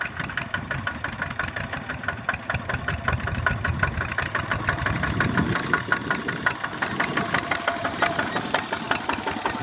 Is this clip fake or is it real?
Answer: real